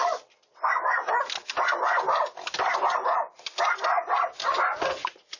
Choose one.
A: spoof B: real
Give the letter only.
B